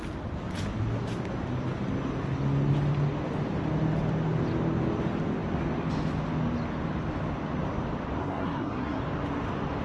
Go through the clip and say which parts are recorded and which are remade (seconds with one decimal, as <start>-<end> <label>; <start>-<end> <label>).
0.0-8.2 recorded; 8.2-9.0 remade; 9.0-9.8 recorded